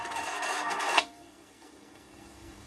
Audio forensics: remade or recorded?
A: remade